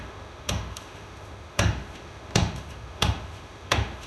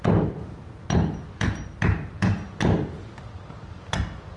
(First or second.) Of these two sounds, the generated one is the first